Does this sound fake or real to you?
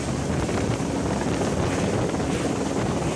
real